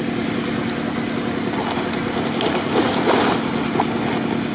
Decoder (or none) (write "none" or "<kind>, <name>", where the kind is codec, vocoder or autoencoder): none